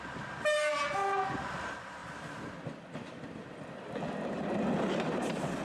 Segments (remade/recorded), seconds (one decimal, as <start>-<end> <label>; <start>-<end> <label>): 0.0-5.6 recorded